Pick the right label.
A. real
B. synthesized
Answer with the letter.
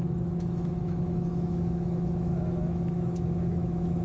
B